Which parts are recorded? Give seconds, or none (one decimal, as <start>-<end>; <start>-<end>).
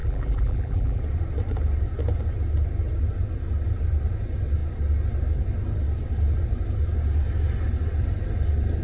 1.0-8.8